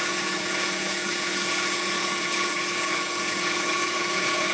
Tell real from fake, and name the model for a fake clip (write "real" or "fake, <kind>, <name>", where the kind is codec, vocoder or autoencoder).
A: fake, codec, HILCodec